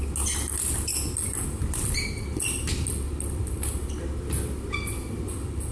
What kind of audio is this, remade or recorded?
recorded